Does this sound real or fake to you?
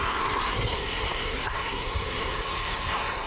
fake